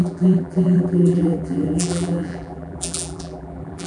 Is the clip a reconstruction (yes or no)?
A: yes